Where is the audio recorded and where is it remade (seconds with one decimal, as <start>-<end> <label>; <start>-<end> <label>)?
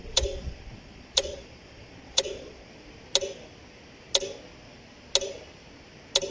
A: 0.0-2.7 remade; 2.7-6.3 recorded